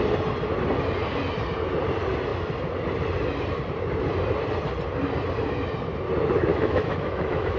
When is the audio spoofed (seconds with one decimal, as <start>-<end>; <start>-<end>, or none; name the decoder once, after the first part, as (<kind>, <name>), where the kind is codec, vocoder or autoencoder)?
6.5-7.6 (autoencoder, DAC-VAE)